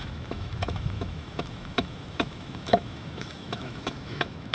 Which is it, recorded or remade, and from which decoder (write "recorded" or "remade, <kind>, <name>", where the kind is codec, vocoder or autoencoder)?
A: remade, autoencoder, DAC-VAE